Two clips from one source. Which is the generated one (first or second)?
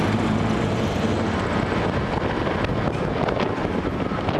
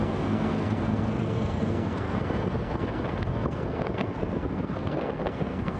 second